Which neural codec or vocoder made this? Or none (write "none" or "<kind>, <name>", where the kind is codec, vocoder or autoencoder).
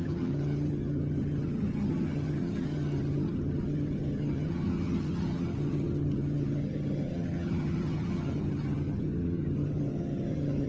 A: vocoder, HiFi-GAN